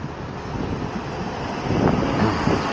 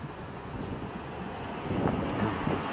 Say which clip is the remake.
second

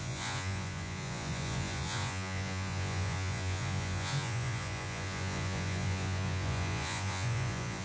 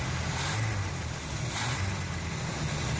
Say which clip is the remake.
first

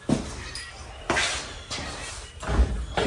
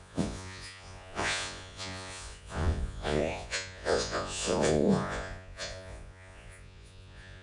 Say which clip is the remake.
second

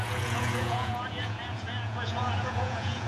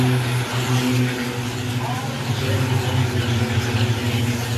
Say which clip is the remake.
first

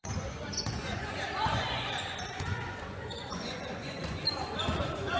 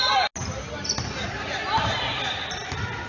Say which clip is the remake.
first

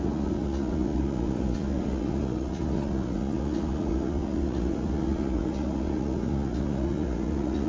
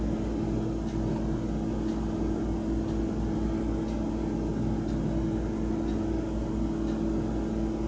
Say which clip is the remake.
first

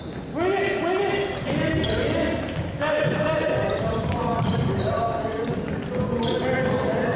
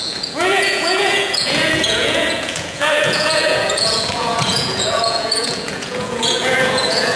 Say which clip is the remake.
second